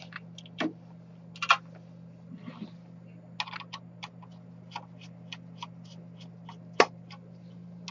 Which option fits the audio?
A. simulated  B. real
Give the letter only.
B